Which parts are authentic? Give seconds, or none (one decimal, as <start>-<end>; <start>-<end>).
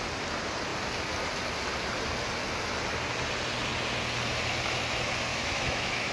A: 0.0-5.3